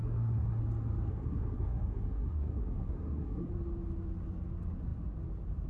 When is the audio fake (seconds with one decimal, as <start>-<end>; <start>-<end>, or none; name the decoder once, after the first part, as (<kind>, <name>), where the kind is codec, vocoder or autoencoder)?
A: 0.0-0.6 (codec, SNAC); 1.1-3.5